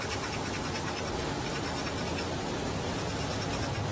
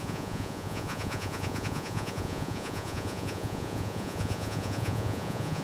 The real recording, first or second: first